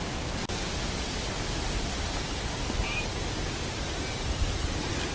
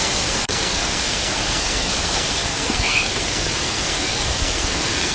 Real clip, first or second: first